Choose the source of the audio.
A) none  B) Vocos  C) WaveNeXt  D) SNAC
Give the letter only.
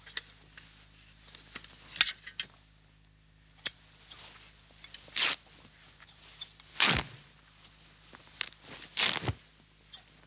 A